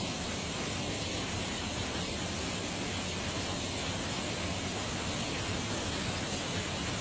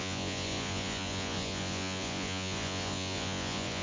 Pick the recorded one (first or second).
first